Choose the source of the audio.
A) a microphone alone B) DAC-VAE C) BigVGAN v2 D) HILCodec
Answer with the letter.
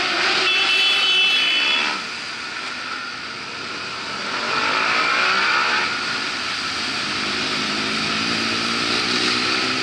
A